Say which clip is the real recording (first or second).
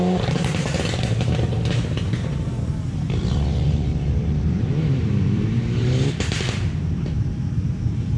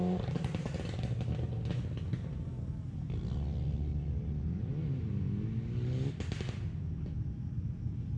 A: second